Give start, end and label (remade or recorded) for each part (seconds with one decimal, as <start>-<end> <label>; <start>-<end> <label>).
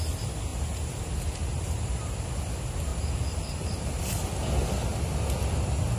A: 0.0-0.5 recorded; 0.5-2.3 remade; 2.3-2.9 recorded; 2.9-4.0 remade; 4.0-6.0 recorded